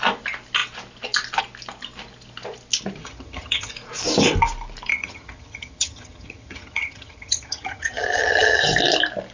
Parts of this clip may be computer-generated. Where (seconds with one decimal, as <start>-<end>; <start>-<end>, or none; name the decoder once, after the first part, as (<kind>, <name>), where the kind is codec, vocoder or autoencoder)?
3.0-3.7 (vocoder, HiFi-GAN); 4.9-8.6

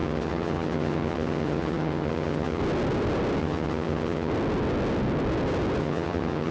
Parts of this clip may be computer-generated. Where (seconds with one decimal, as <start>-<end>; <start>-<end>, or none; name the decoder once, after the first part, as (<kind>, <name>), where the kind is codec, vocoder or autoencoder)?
0.0-2.6 (vocoder, HiFi-GAN); 3.4-4.3; 5.8-6.5

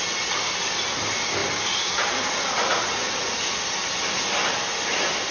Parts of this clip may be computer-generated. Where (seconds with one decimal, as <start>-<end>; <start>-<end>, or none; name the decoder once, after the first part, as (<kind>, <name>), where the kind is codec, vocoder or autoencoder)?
none

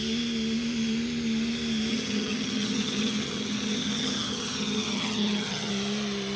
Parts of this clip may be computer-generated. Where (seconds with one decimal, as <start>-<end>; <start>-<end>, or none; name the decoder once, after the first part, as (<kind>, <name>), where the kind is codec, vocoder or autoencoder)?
1.9-5.7 (vocoder, HiFi-GAN)

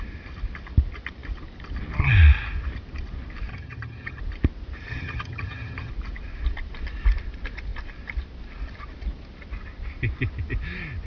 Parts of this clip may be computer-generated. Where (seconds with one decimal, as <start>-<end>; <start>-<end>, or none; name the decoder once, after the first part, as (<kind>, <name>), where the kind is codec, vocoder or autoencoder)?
3.5-4.2 (vocoder, HiFi-GAN); 4.9-5.9

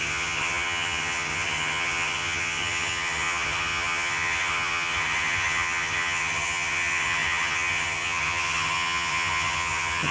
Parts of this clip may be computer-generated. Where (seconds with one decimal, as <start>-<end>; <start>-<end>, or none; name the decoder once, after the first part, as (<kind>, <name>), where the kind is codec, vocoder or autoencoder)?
0.0-10.1 (vocoder, HiFi-GAN)

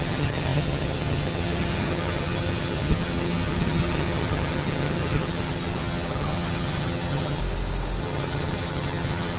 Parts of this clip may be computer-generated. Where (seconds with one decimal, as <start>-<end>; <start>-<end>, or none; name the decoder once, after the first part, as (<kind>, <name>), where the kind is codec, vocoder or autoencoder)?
0.0-7.4 (vocoder, HiFi-GAN); 8.0-9.4